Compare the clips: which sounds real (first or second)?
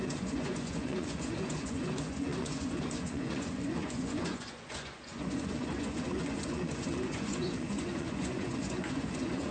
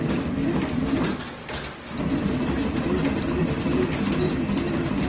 second